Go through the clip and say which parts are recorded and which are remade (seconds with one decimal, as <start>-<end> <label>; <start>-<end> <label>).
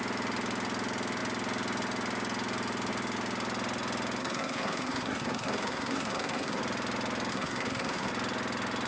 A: 0.0-4.2 recorded; 4.2-6.6 remade; 6.6-7.3 recorded; 7.3-8.1 remade; 8.1-8.9 recorded